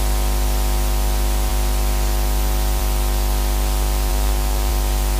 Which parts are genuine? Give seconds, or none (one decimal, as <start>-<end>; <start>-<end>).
0.0-4.1; 4.7-5.2